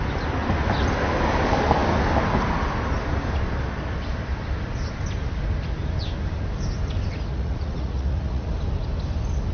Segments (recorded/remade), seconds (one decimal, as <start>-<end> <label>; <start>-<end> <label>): 0.0-7.3 recorded; 7.3-8.5 remade; 8.5-9.5 recorded